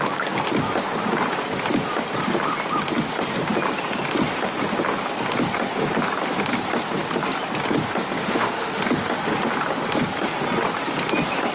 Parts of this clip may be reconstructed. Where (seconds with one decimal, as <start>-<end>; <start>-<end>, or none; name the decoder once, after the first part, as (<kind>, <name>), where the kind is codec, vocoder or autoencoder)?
8.2-8.8 (autoencoder, DAC-VAE)